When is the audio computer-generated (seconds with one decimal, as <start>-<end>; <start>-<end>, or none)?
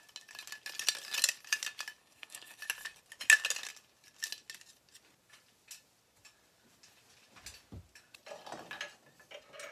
2.0-2.6